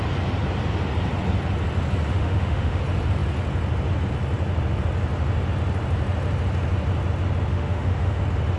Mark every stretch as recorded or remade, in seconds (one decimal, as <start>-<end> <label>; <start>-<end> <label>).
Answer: 0.0-2.1 recorded; 2.1-2.8 remade; 2.8-7.5 recorded; 7.5-8.2 remade; 8.2-8.6 recorded